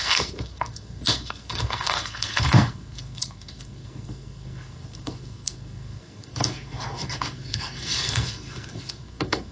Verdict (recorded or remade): remade